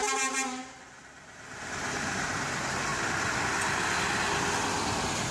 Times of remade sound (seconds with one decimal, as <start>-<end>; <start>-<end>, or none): 0.0-2.9

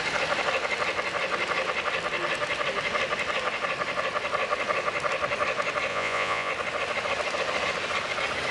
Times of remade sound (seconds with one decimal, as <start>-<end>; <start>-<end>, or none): 5.9-6.5

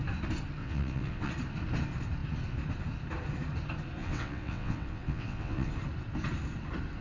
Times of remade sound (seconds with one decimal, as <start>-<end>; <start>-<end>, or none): 0.6-1.3; 4.0-5.7

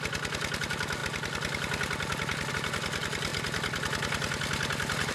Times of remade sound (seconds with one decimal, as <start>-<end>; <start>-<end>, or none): none

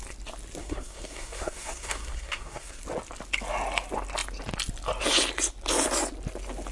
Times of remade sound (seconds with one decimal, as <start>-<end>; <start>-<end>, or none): 0.6-2.8